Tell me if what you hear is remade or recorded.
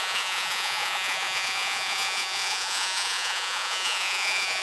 remade